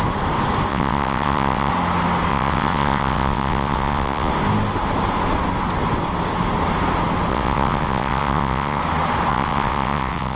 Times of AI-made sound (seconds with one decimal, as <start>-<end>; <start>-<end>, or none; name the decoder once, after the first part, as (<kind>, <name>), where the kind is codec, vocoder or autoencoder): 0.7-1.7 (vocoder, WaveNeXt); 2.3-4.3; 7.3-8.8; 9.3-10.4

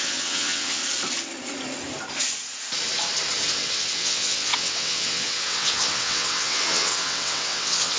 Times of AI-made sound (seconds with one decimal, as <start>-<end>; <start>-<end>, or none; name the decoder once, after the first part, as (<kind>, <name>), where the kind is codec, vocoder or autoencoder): 0.0-0.8 (vocoder, WaveNeXt); 3.5-8.0

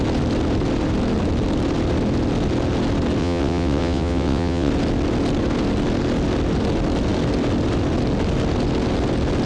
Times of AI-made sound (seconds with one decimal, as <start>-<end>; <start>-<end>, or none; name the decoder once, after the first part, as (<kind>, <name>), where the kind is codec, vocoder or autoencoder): 3.2-4.7 (vocoder, WaveNeXt)